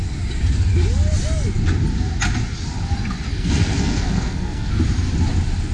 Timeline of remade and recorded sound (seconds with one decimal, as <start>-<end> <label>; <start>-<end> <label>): 0.0-3.3 recorded; 3.3-4.7 remade; 4.7-5.7 recorded